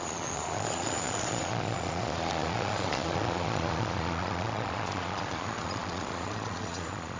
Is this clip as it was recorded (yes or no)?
no